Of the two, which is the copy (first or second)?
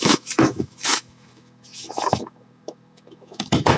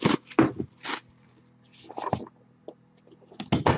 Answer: first